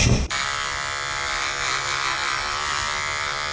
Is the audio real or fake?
real